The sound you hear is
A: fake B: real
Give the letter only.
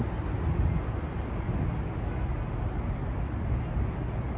B